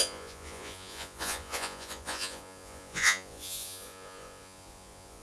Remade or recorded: remade